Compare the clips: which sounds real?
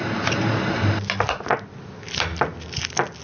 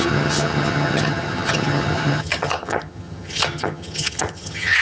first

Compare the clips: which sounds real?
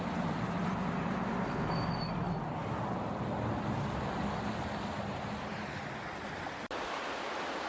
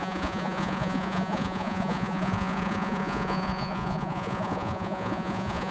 first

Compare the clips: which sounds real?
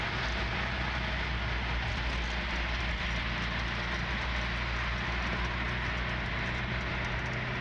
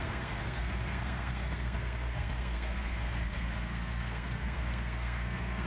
first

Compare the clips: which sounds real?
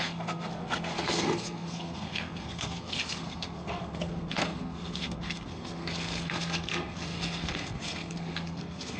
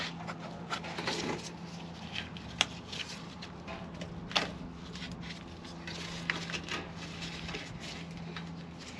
second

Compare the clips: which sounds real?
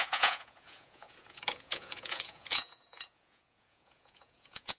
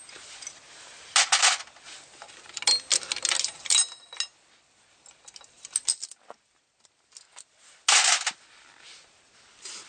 second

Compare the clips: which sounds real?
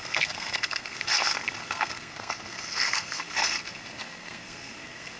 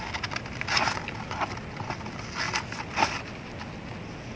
second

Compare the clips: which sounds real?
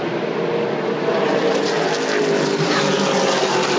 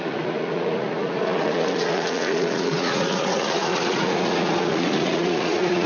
first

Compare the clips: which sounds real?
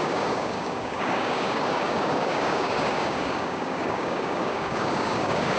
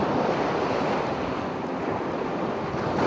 second